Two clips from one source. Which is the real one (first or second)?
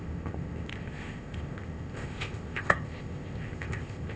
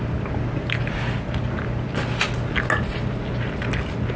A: second